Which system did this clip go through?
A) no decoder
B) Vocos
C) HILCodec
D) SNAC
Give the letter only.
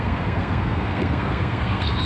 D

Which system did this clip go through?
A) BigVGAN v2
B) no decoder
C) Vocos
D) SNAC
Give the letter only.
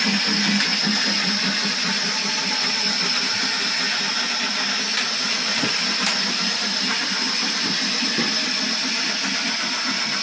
B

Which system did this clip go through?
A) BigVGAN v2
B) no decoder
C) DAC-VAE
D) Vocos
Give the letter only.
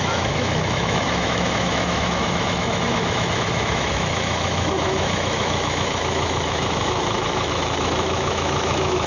C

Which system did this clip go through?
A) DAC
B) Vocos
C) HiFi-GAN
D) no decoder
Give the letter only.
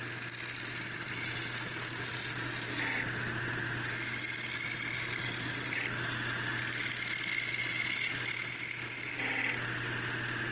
D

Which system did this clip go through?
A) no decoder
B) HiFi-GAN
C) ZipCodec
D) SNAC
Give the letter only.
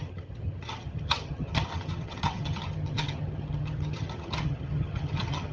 B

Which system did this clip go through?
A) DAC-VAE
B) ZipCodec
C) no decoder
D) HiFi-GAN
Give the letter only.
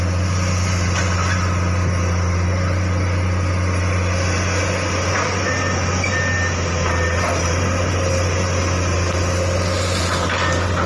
C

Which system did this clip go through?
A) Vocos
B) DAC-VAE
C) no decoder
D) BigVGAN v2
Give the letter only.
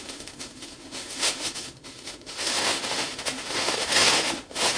B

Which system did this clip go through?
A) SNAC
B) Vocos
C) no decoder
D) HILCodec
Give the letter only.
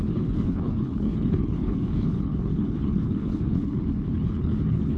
D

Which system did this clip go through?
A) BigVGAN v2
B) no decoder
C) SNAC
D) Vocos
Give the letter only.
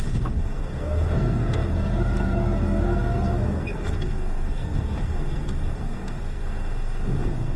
C